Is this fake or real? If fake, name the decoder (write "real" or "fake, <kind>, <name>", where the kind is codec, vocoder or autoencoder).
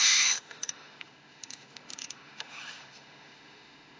fake, autoencoder, DAC-VAE